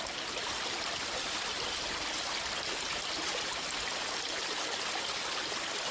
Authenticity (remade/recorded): recorded